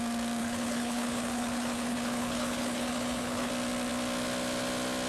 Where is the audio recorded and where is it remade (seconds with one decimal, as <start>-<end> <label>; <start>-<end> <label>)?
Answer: 0.0-0.4 recorded; 0.4-3.5 remade; 3.5-5.1 recorded